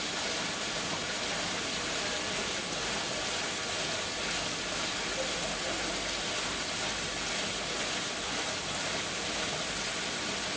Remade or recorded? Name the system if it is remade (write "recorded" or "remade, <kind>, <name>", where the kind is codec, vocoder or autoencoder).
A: recorded